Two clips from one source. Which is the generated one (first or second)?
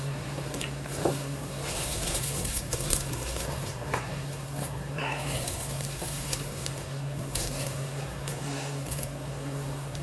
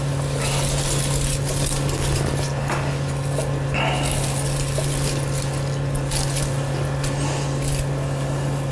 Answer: first